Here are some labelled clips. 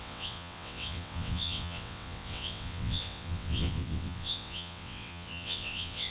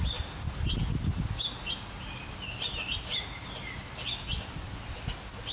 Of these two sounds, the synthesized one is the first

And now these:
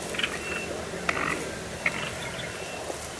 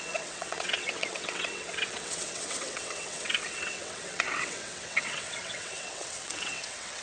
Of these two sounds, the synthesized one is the second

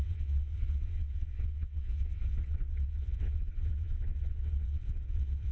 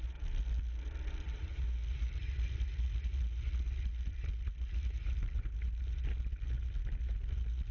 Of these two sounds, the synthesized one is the first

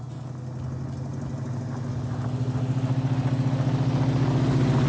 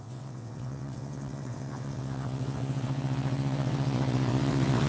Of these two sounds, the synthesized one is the second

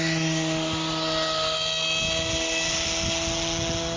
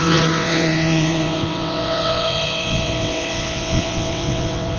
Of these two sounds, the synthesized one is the second